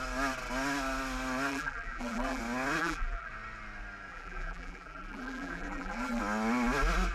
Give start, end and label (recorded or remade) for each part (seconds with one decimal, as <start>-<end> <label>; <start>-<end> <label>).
0.0-1.5 recorded; 1.5-2.4 remade; 2.4-2.8 recorded; 2.8-3.3 remade; 3.3-4.1 recorded; 4.1-6.2 remade; 6.2-7.1 recorded